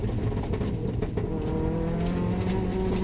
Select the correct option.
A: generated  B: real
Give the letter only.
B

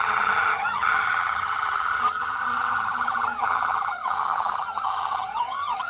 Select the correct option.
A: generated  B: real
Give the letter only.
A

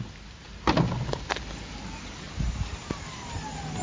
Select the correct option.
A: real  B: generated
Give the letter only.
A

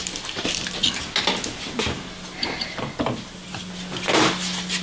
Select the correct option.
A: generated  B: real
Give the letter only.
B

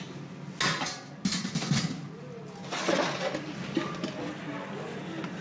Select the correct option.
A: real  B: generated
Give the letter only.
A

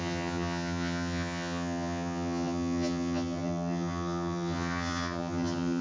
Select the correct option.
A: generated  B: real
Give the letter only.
A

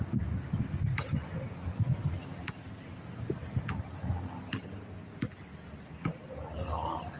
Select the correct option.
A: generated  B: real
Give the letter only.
B